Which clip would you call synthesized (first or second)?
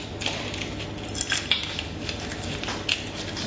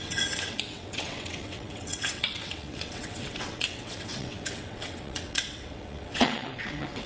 second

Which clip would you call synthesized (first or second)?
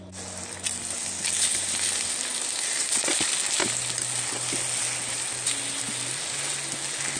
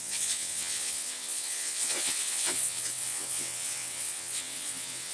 second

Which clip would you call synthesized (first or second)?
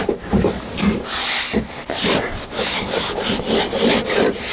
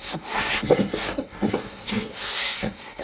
second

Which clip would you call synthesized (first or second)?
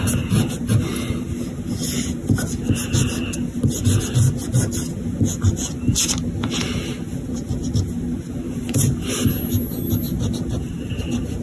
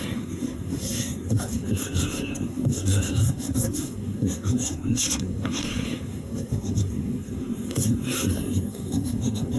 second